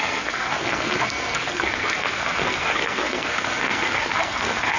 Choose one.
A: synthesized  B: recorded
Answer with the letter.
A